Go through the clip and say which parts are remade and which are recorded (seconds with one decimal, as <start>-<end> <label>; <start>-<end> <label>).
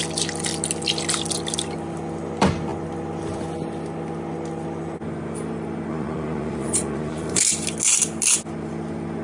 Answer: 0.0-5.9 recorded; 5.9-7.4 remade; 7.4-9.2 recorded